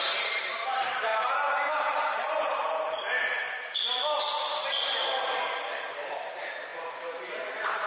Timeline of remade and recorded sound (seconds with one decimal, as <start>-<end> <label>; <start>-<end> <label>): 0.0-1.1 remade; 1.1-1.7 recorded; 1.7-7.9 remade